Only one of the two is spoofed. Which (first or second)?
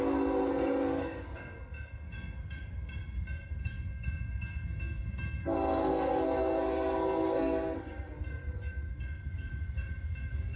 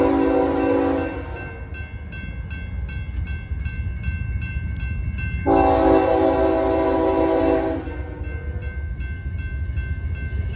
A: first